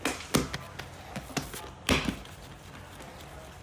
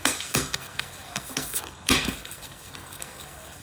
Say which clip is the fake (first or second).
second